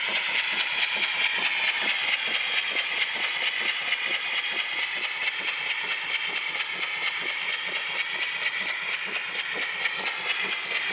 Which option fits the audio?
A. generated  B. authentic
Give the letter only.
B